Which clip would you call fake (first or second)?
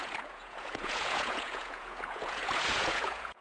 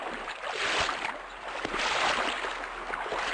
first